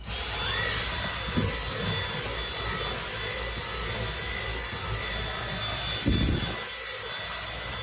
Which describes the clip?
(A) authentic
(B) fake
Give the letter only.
A